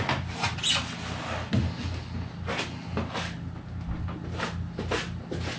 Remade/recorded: recorded